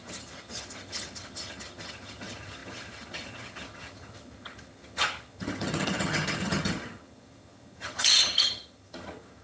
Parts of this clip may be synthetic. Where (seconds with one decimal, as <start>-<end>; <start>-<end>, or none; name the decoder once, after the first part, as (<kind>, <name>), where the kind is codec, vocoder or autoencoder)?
0.0-9.4 (vocoder, HiFi-GAN)